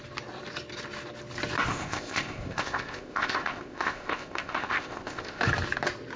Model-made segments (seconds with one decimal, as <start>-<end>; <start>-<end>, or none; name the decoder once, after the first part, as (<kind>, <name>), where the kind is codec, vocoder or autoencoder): 1.7-5.4 (codec, ZipCodec)